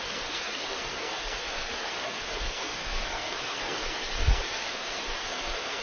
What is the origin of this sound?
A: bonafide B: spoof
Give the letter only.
B